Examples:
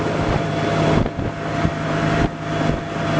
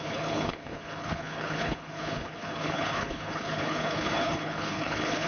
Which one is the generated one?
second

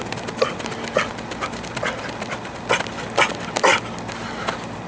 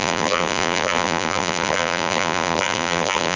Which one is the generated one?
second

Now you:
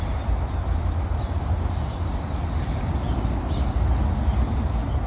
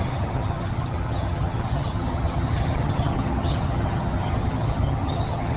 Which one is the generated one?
second